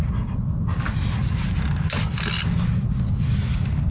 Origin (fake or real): real